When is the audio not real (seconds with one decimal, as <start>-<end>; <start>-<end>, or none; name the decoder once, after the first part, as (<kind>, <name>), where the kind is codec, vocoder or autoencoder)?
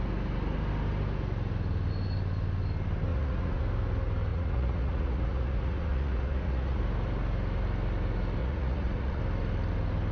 3.1-3.6 (vocoder, Vocos); 4.3-6.8; 8.4-9.2